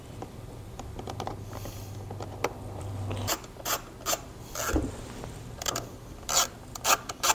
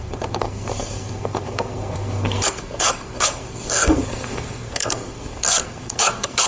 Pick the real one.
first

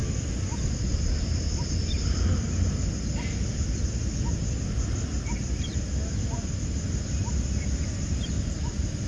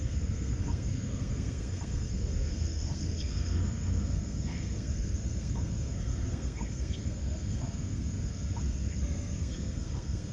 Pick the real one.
first